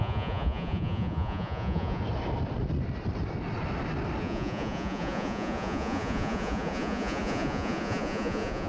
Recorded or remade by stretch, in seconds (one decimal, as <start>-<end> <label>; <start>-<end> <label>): 0.0-2.0 remade; 2.0-4.2 recorded; 4.2-8.7 remade